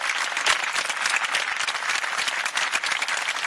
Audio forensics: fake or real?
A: real